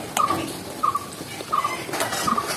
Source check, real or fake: real